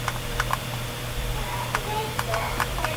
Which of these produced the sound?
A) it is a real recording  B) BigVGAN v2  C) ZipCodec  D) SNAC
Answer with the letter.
B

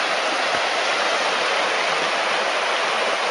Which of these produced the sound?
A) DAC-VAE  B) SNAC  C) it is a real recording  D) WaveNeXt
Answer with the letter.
C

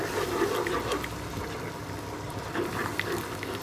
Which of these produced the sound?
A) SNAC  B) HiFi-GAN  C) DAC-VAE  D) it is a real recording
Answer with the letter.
D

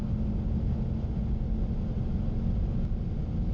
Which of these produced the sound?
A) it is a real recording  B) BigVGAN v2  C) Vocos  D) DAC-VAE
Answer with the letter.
A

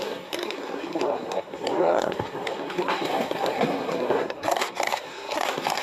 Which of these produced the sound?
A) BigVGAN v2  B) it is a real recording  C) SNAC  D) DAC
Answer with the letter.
C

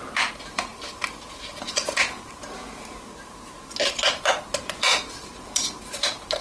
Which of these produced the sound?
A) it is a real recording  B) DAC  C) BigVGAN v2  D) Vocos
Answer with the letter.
C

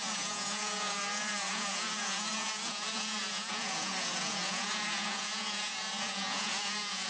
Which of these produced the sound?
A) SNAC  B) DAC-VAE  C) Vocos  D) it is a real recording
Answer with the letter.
C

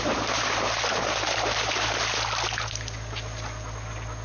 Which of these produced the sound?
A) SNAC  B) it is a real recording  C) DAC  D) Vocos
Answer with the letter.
B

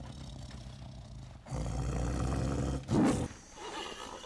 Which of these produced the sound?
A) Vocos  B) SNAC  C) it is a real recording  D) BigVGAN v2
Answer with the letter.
C